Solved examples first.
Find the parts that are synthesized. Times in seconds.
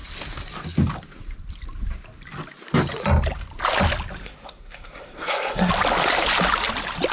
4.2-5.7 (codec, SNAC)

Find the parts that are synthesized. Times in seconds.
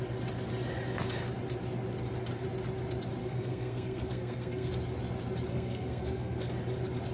3.2-4.7 (codec, SNAC); 5.5-6.5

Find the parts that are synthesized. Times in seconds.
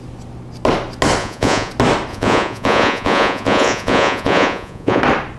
1.2-1.7 (vocoder, Vocos); 2.1-5.0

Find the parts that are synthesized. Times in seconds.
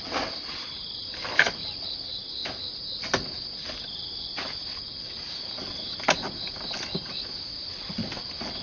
0.0-2.4 (vocoder, BigVGAN v2); 7.0-8.0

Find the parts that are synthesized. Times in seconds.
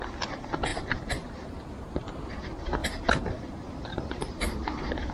0.7-2.4 (vocoder, BigVGAN v2); 2.8-5.1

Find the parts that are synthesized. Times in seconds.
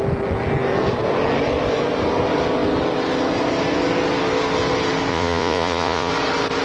5.1-6.1 (vocoder, Vocos)